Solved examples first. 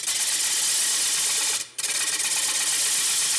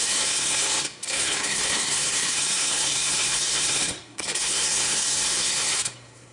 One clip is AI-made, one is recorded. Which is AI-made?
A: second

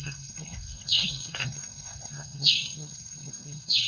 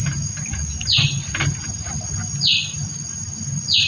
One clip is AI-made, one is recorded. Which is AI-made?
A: first